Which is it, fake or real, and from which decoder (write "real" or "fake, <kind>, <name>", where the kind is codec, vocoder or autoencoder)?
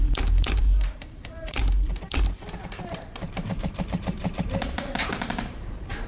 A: fake, vocoder, BigVGAN v2